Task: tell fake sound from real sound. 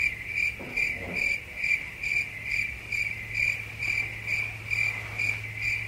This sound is real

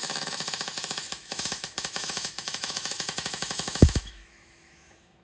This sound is fake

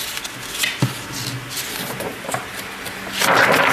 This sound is real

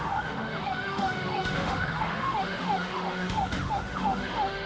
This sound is fake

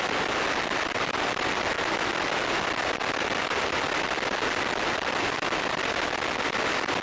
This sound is real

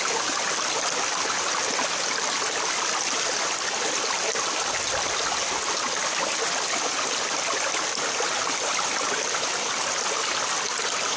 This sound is real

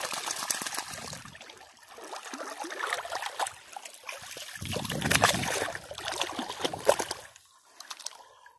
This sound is real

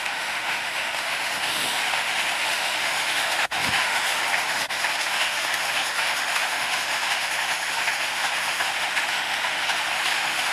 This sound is fake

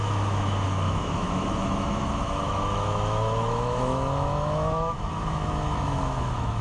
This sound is fake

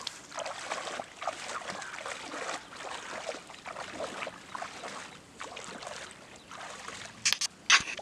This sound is real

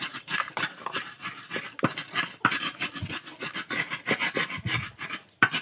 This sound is real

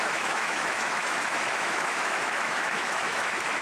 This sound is fake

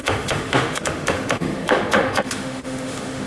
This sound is fake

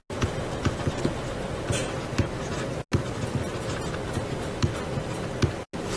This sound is real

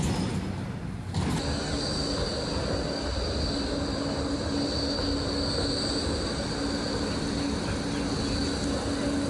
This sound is real